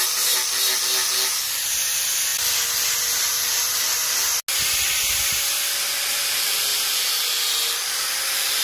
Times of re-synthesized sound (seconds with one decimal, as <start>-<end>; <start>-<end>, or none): none